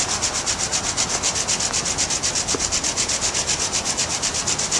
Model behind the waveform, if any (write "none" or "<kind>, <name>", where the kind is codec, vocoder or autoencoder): none